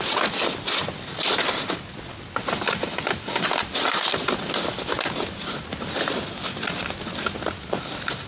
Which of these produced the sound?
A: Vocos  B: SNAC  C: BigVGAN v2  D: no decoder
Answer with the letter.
D